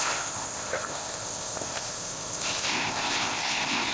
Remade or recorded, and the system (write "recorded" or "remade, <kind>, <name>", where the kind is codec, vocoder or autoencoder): remade, codec, ZipCodec